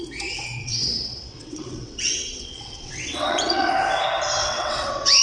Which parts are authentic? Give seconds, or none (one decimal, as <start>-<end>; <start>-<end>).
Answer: 0.0-0.6; 3.7-4.4